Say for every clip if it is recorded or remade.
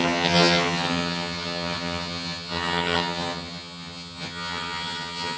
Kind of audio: remade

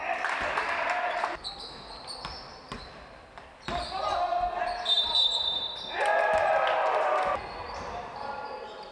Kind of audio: recorded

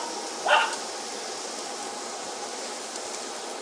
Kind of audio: recorded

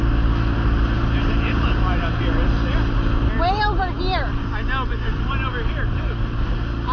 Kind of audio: recorded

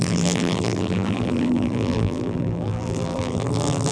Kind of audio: remade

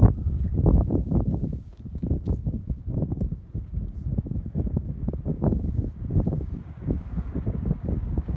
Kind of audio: remade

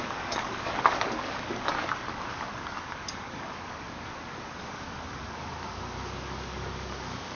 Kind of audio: remade